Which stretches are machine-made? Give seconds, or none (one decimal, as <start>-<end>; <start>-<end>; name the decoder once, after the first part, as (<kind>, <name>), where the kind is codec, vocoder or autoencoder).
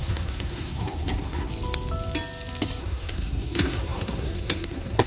0.0-1.5 (codec, SNAC); 2.8-5.1